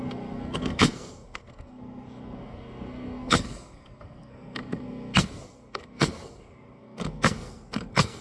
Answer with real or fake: fake